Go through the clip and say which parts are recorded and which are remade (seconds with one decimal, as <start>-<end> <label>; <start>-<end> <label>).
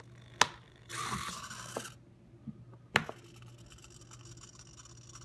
0.0-5.2 recorded